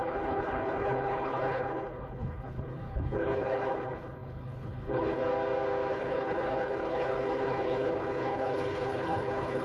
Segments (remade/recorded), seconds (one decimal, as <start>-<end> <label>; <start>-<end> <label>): 0.0-5.2 remade; 5.2-5.9 recorded; 5.9-9.6 remade